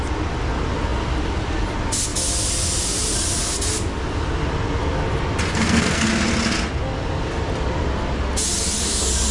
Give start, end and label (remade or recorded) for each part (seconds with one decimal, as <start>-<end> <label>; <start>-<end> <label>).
0.0-5.5 recorded; 5.5-6.1 remade; 6.1-9.3 recorded